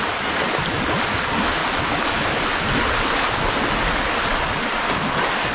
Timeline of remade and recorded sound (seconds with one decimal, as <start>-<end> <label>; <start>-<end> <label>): 0.0-5.5 recorded